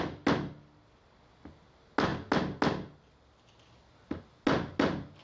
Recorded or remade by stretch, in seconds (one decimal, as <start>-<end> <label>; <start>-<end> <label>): 0.0-5.2 recorded